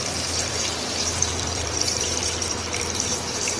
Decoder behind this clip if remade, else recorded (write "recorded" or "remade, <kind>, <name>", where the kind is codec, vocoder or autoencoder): remade, vocoder, BigVGAN v2